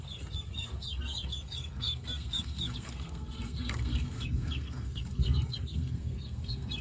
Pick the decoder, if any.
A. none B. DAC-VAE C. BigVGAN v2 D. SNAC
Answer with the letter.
D